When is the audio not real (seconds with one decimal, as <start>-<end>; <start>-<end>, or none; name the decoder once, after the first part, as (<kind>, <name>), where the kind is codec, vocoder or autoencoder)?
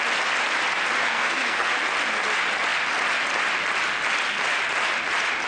1.0-1.7 (codec, SNAC)